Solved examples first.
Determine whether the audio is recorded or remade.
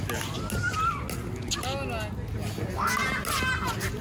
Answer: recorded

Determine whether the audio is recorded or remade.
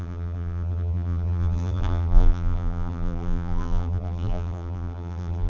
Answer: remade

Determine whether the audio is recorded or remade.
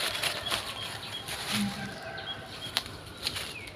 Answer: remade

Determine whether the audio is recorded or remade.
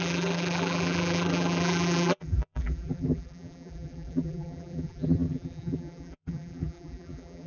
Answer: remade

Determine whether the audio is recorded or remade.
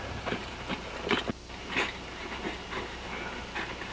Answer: remade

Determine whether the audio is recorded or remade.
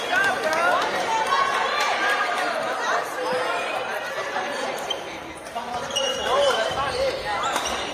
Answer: remade